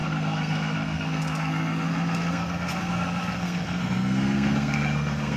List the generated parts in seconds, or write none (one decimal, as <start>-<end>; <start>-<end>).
0.0-5.4

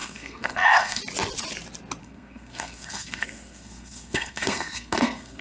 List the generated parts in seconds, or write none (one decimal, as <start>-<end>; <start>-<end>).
0.0-1.0; 2.0-5.4

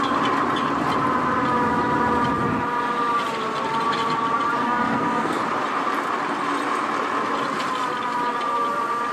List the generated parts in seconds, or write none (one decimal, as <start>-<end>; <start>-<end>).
4.6-5.4

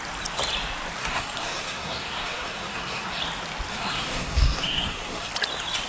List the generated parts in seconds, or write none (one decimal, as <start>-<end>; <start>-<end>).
1.0-3.2; 3.7-5.3

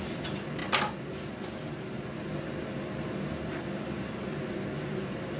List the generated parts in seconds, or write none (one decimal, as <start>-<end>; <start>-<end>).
none

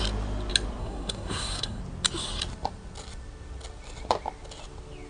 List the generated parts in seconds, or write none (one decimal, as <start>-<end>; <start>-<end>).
0.8-1.8